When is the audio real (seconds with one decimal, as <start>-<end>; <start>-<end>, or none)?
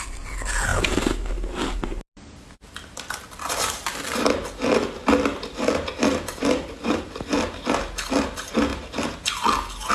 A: 0.0-0.7; 1.3-1.9; 7.0-9.9